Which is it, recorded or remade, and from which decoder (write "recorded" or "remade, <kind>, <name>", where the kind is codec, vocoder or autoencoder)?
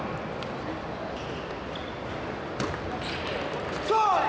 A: recorded